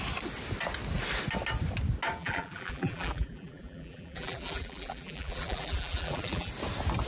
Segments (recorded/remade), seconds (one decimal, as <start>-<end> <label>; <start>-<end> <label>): 0.0-2.2 recorded; 2.2-6.5 remade; 6.5-7.1 recorded